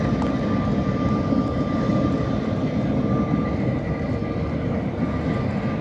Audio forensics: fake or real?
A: real